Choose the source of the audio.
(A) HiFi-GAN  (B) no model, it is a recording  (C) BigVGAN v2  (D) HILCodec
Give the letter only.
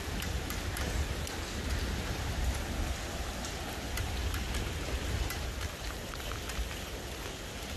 B